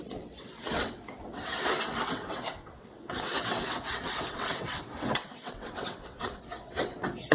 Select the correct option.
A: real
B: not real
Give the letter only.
B